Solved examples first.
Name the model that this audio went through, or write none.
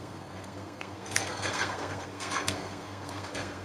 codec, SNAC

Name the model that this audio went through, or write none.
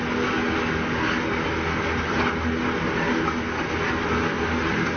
none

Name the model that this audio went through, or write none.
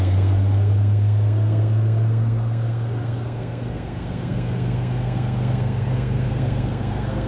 codec, SNAC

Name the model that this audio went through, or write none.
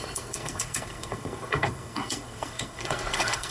codec, SNAC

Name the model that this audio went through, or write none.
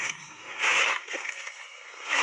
codec, SNAC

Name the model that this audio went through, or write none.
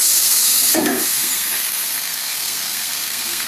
codec, SNAC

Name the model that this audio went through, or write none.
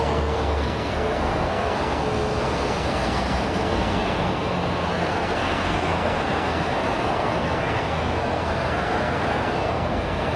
codec, SNAC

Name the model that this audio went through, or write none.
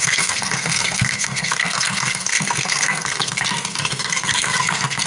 codec, SNAC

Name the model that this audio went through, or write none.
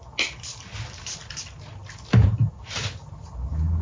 none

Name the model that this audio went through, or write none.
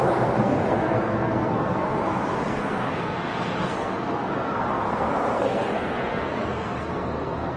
codec, SNAC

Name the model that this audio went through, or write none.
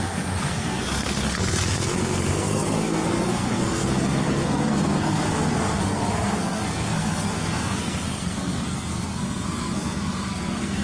codec, SNAC